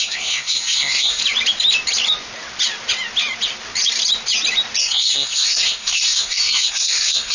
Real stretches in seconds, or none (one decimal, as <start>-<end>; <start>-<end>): 1.2-4.8